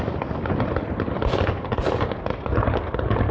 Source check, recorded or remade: recorded